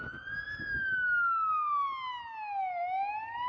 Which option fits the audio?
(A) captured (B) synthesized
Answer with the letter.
A